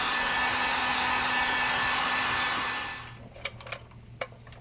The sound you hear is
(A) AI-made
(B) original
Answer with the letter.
B